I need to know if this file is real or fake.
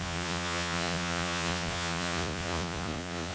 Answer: fake